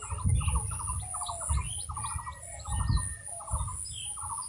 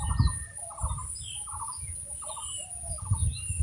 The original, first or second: first